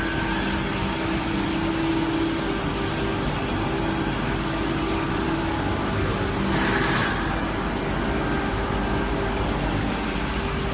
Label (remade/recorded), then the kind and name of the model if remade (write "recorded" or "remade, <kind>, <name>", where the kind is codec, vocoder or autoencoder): recorded